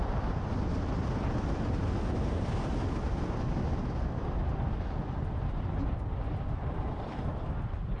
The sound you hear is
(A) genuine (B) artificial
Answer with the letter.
A